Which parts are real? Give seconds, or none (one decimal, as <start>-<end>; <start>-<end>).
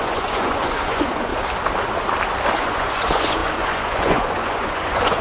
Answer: 1.3-2.6